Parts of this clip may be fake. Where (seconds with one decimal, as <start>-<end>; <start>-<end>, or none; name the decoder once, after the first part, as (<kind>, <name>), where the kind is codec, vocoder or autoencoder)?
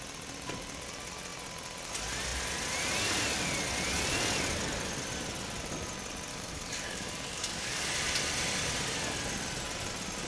6.3-7.8 (codec, DAC)